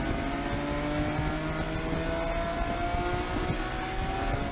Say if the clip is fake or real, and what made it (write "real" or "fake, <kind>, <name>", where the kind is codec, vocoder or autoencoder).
real